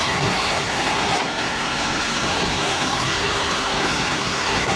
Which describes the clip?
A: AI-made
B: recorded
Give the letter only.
A